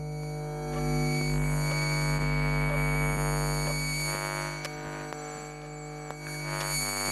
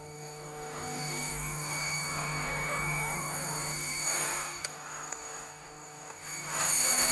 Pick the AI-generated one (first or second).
second